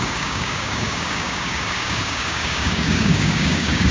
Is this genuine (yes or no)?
no